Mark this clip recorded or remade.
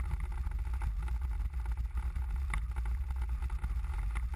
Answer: recorded